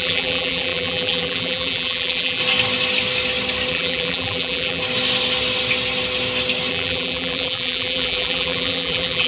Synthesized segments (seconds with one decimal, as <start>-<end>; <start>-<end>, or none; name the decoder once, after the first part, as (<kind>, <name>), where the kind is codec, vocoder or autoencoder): 0.0-2.4 (vocoder, BigVGAN v2); 3.7-4.8; 6.7-9.3